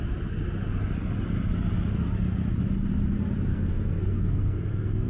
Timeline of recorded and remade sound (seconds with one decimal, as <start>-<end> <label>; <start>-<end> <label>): 0.0-3.5 recorded; 3.5-5.1 remade